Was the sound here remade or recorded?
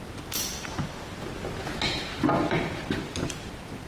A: recorded